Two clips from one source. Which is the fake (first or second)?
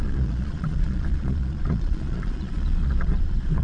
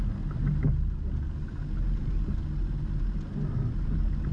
first